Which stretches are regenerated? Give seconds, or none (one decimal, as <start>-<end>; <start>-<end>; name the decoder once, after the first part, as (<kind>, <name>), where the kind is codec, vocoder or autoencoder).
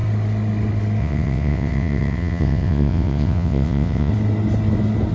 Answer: 1.0-4.1 (vocoder, WaveNeXt)